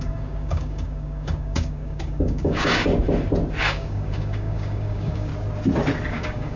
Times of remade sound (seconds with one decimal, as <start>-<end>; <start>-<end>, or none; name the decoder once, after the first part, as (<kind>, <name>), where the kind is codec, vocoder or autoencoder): 0.0-2.9 (codec, DAC); 3.6-5.3; 6.1-6.6